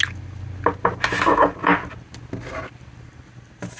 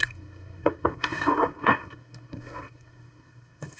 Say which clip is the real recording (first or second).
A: first